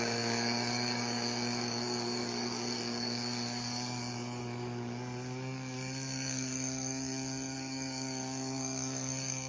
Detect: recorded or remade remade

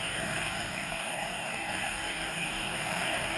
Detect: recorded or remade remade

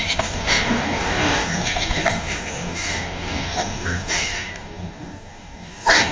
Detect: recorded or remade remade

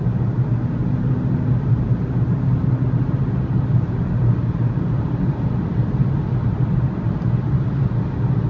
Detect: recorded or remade recorded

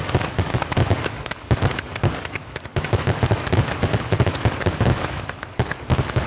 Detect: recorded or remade remade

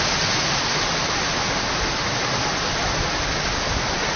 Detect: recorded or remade recorded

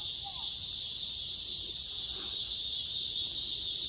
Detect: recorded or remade recorded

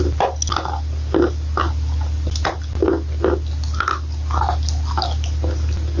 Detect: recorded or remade recorded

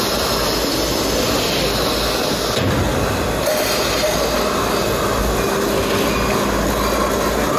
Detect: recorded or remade recorded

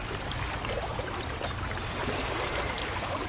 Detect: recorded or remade recorded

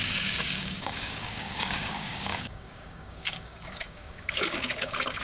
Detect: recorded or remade remade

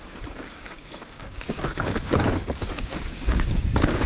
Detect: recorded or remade remade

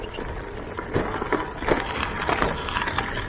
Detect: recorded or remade recorded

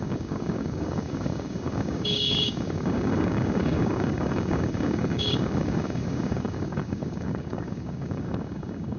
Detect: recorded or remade remade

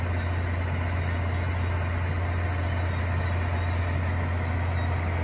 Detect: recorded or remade recorded